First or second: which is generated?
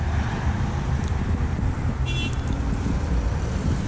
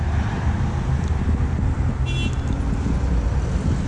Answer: first